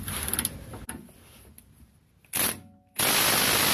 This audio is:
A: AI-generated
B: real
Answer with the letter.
B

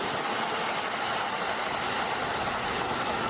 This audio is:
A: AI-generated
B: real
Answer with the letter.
B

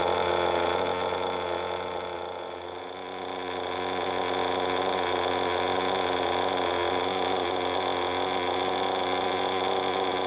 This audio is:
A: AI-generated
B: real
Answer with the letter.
B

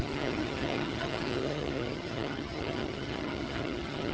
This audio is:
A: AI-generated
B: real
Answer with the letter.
A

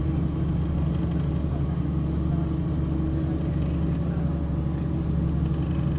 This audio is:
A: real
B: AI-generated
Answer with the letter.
A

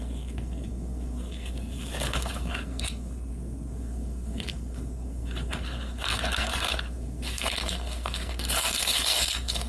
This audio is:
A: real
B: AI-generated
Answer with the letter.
B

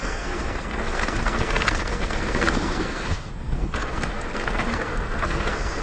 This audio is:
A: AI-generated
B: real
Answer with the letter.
A